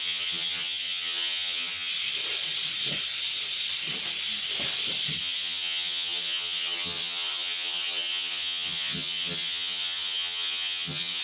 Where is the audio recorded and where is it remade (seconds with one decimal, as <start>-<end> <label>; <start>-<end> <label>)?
0.0-1.9 remade; 1.9-5.2 recorded; 5.2-11.2 remade